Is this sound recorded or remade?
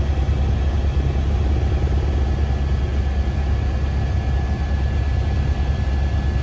recorded